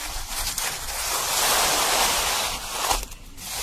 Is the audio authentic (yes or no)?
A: yes